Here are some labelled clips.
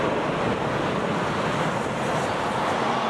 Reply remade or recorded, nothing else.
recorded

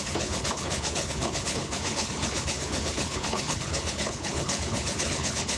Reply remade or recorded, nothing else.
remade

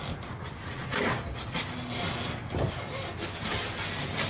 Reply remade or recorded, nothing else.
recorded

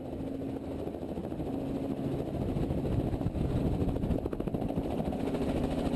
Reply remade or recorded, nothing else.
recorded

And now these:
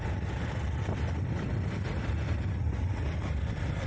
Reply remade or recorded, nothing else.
recorded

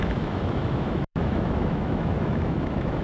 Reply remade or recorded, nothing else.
remade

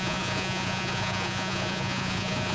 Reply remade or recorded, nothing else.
remade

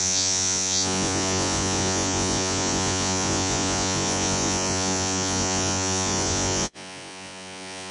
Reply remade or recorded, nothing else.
remade